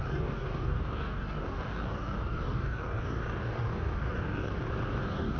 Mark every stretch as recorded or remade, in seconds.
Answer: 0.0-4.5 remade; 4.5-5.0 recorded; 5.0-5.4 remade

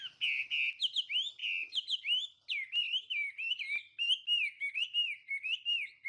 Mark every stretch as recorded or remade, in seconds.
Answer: 0.0-6.1 recorded

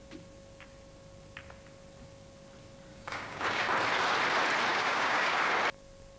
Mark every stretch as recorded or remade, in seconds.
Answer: 0.0-2.9 recorded; 2.9-3.6 remade; 3.6-4.7 recorded; 4.7-5.5 remade; 5.5-6.2 recorded

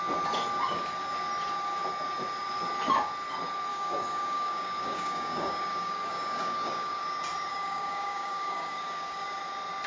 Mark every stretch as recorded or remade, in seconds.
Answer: 0.0-3.7 recorded; 3.7-7.0 remade; 7.0-7.5 recorded; 7.5-9.4 remade; 9.4-9.9 recorded

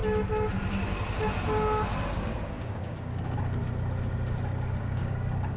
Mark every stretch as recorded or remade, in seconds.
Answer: 0.0-2.1 recorded; 2.1-3.6 remade; 3.6-4.8 recorded; 4.8-5.6 remade

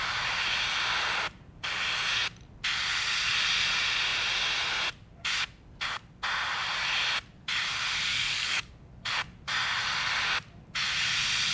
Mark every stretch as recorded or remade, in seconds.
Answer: 0.0-8.1 recorded; 8.1-8.7 remade; 8.7-11.5 recorded

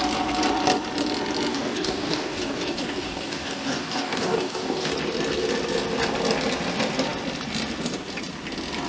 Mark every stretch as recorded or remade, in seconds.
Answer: 0.0-1.5 recorded; 1.5-4.9 remade; 4.9-8.9 recorded

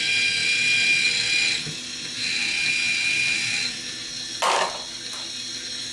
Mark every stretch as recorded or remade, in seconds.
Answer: 0.0-5.9 recorded